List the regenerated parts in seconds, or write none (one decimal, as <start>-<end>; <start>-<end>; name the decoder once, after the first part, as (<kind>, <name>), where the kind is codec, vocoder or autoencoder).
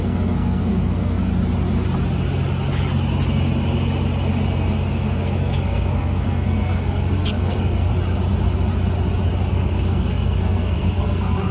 0.0-1.3 (codec, SNAC); 4.9-7.9; 9.5-11.5